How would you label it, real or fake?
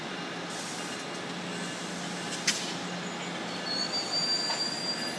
real